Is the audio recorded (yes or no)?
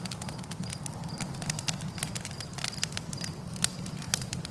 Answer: no